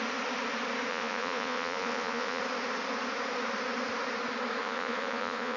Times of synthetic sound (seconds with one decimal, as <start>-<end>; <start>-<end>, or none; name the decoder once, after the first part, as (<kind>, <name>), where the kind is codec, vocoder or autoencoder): 0.9-2.4 (vocoder, Vocos); 4.6-5.6